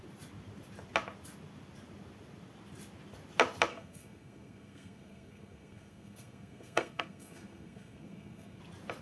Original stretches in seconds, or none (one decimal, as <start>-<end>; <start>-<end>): 0.0-3.7; 8.6-9.0